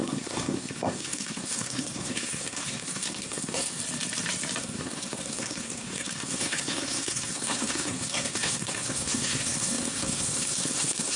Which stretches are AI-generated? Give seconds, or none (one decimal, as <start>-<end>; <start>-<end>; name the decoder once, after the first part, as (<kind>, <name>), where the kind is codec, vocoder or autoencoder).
0.0-3.8 (codec, SNAC); 4.6-11.2